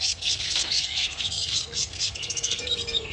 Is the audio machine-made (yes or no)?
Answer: yes